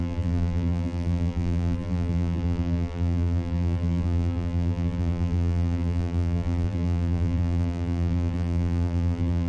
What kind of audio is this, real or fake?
fake